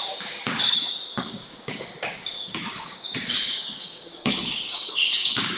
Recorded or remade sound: remade